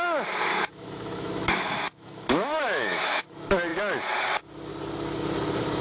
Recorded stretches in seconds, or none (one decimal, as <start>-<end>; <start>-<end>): 0.0-0.5; 3.2-5.8